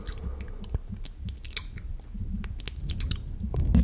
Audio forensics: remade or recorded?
recorded